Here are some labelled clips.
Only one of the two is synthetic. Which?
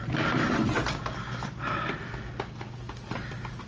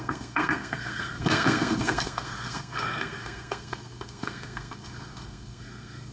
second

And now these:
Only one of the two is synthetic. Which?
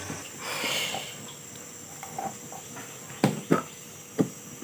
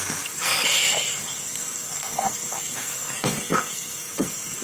second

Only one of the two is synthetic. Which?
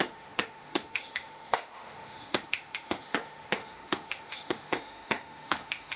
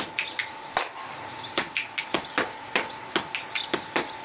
first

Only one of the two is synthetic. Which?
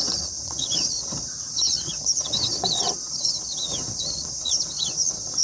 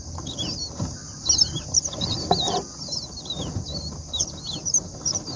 first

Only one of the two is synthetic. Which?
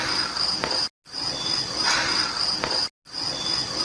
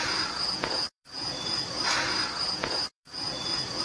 second